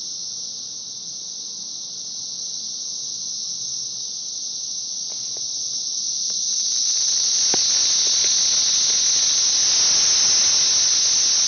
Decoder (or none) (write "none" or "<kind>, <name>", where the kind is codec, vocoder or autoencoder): none